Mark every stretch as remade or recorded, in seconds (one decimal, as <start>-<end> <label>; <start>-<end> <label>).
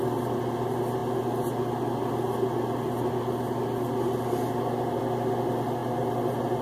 0.0-6.6 recorded